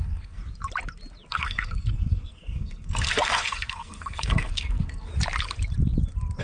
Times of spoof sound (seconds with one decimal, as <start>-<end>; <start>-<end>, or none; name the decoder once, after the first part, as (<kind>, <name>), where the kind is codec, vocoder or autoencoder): 0.0-0.4 (codec, SNAC); 1.3-5.1